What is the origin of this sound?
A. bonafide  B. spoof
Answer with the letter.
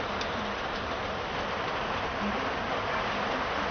A